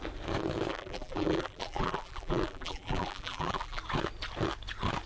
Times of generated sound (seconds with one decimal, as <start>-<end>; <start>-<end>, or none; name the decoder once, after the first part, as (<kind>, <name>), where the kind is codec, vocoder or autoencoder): 0.7-3.8 (vocoder, BigVGAN v2)